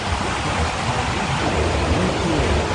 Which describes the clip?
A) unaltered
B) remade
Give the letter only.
A